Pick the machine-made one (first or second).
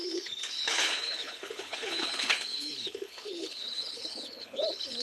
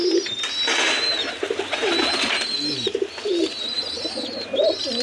first